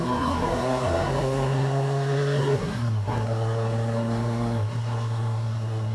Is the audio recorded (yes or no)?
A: no